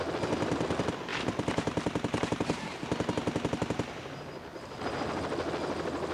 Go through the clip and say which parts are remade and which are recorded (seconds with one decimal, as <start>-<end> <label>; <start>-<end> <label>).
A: 0.0-1.1 recorded; 1.1-2.8 remade; 2.8-6.1 recorded